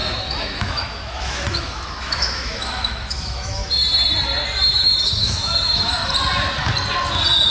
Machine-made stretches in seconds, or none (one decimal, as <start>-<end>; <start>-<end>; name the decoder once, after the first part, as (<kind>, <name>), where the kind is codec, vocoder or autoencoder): 0.0-3.6 (autoencoder, DAC-VAE); 4.6-6.0